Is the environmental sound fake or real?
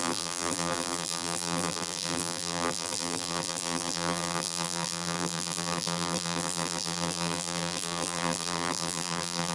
fake